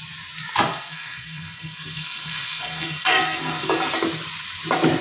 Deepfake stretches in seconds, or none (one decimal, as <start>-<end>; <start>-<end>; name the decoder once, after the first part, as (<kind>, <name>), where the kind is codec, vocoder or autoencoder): 0.7-3.7 (codec, SNAC)